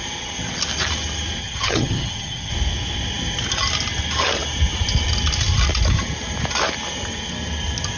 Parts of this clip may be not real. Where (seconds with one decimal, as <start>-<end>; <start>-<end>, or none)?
1.4-2.5